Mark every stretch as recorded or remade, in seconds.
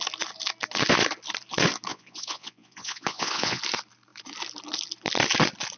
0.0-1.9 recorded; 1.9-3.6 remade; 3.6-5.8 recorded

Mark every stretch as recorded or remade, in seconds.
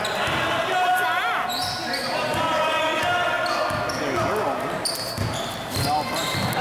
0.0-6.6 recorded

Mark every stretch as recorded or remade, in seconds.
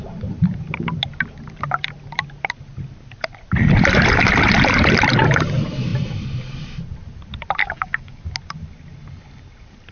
0.0-7.6 recorded; 7.6-8.2 remade; 8.2-9.9 recorded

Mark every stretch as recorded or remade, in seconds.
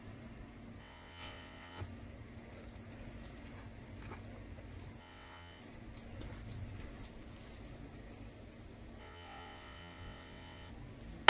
0.0-0.8 recorded; 0.8-1.8 remade; 1.8-5.0 recorded; 5.0-5.6 remade; 5.6-9.0 recorded; 9.0-10.7 remade; 10.7-11.3 recorded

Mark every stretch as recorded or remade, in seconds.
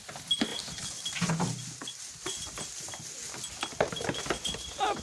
0.0-5.0 recorded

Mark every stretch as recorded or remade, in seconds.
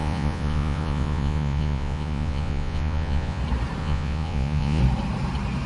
0.0-3.4 remade; 3.4-3.8 recorded; 3.8-4.8 remade; 4.8-5.7 recorded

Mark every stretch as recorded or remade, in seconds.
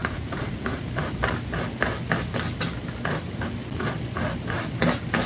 0.0-0.8 remade; 0.8-5.3 recorded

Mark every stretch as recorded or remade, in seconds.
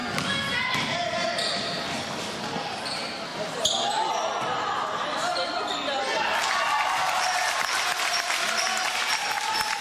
0.0-9.8 recorded